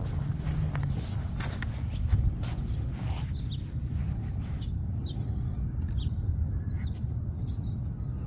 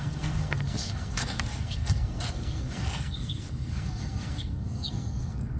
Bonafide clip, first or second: first